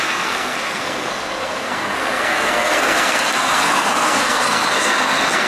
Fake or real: fake